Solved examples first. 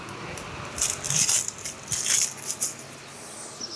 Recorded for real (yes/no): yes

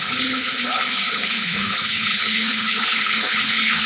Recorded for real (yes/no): no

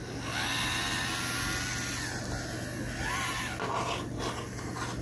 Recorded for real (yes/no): yes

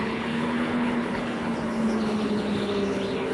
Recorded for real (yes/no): no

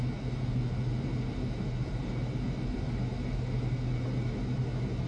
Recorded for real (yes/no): yes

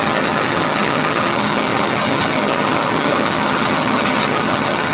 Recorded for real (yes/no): no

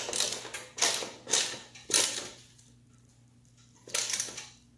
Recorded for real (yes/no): yes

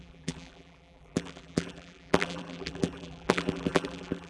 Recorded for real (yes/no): no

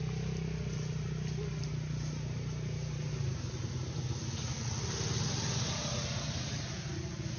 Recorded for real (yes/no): yes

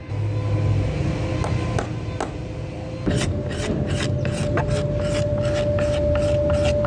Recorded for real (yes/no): yes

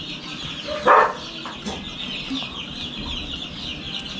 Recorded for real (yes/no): yes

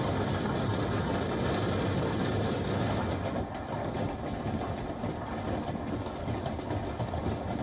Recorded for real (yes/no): yes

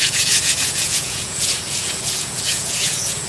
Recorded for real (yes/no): no